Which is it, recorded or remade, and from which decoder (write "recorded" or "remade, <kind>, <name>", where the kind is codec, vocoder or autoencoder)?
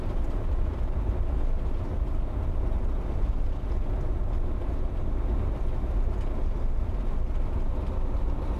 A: recorded